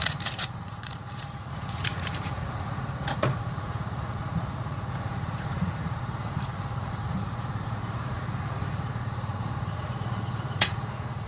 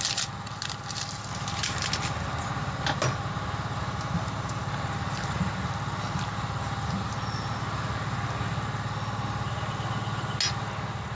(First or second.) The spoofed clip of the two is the first